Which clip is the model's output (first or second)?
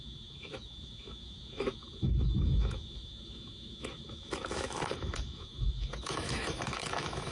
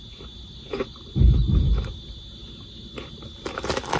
first